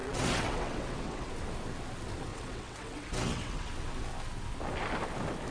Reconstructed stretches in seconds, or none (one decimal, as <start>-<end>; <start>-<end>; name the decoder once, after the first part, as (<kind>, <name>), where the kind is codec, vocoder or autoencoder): 0.0-1.3 (vocoder, WaveNeXt); 2.3-3.7

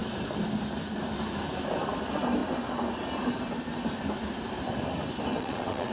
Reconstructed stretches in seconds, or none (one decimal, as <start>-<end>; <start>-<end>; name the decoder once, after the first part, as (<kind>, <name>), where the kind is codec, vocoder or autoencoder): 5.3-5.9 (vocoder, WaveNeXt)